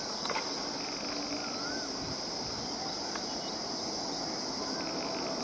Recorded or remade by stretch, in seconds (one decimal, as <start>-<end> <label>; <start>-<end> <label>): 0.0-5.4 recorded

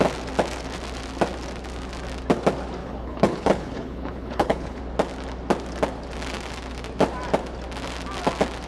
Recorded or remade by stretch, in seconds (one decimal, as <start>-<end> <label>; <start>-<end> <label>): 0.0-2.8 recorded; 2.8-4.8 remade; 4.8-8.7 recorded

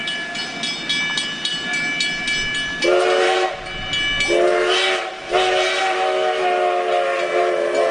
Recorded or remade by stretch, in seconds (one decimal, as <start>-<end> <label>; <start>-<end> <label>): 0.0-7.9 recorded

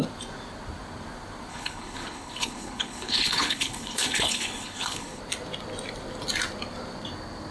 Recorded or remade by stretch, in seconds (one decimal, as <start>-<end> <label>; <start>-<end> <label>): 0.0-1.5 recorded; 1.5-5.2 remade; 5.2-7.5 recorded

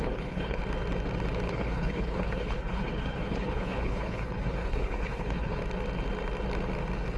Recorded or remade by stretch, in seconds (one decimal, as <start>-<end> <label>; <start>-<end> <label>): 0.0-0.6 remade; 0.6-1.5 recorded; 1.5-5.6 remade; 5.6-7.2 recorded

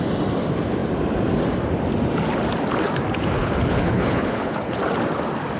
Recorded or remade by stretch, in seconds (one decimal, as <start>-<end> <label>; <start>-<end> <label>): 0.0-3.4 recorded; 3.4-4.8 remade; 4.8-5.6 recorded